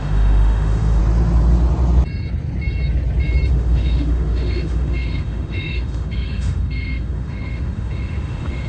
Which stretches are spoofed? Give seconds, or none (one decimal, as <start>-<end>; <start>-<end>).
0.0-1.0; 3.5-8.7